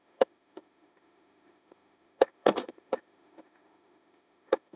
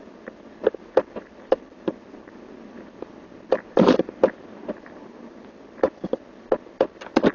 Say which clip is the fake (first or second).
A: first